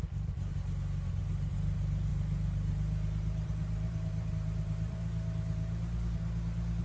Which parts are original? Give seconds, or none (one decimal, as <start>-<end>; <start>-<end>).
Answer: 0.5-1.1; 5.0-6.8